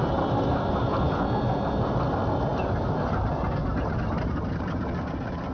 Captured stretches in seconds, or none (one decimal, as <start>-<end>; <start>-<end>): 0.0-3.6; 4.8-5.5